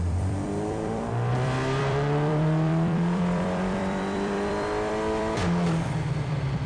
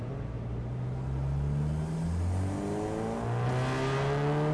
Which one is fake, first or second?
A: first